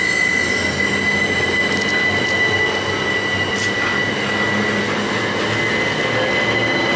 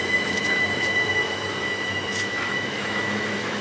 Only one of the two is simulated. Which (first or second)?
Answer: second